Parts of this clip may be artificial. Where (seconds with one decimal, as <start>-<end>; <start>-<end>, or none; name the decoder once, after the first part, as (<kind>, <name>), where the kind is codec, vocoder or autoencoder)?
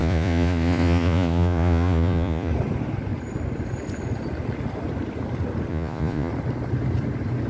0.0-2.5 (vocoder, Vocos); 5.7-6.3